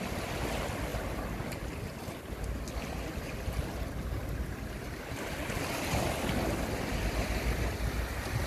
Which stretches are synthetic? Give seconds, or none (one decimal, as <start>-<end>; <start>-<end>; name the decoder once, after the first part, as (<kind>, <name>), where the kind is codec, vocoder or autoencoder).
none